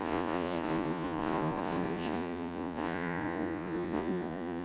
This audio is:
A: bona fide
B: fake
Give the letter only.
B